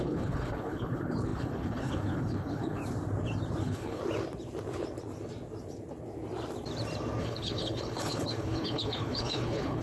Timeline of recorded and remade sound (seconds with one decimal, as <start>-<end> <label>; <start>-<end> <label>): 0.0-2.8 remade; 2.8-3.6 recorded; 3.6-4.0 remade; 4.0-7.2 recorded; 7.2-9.8 remade